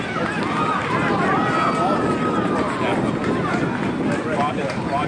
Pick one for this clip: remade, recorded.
recorded